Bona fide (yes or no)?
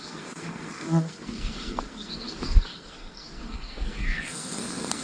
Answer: no